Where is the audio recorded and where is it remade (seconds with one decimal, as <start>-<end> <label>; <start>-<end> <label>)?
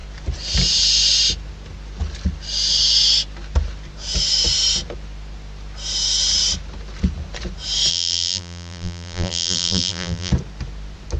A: 0.0-7.9 recorded; 7.9-10.3 remade; 10.3-11.2 recorded